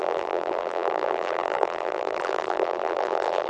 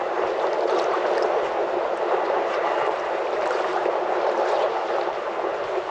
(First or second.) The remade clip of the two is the first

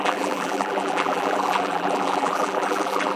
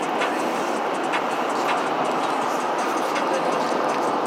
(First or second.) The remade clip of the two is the first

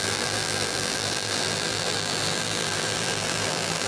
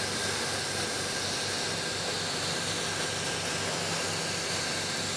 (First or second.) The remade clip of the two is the first